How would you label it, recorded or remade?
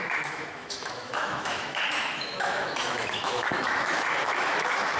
remade